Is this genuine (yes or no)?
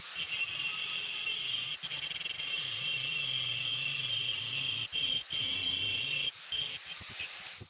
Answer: yes